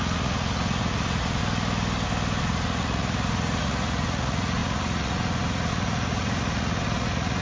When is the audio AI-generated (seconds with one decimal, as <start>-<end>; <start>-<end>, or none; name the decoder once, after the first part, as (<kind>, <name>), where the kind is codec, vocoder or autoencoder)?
0.0-1.4 (vocoder, Vocos); 2.4-7.4